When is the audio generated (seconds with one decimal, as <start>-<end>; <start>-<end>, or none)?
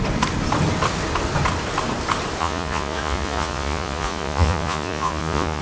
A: 2.4-5.6